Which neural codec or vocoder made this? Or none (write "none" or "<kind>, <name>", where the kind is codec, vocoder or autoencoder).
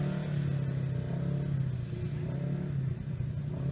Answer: none